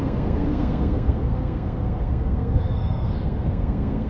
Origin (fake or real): fake